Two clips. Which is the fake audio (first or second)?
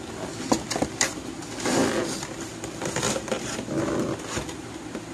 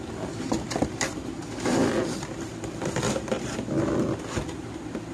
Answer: second